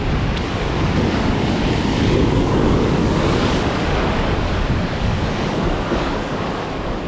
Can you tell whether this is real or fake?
fake